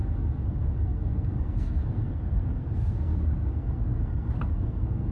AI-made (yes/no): yes